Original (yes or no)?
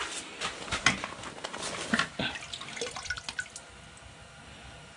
yes